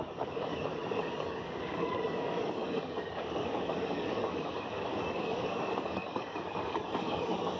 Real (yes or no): no